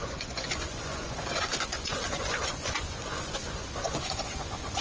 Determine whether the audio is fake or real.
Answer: fake